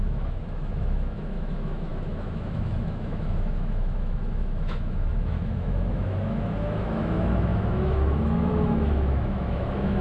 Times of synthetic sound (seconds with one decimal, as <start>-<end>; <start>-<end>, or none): 0.0-10.0